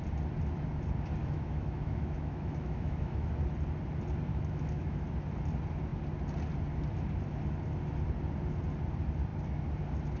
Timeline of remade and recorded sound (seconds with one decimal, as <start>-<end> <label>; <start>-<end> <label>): 0.0-1.2 recorded; 1.2-3.3 remade; 3.3-4.3 recorded; 4.3-5.0 remade; 5.0-10.2 recorded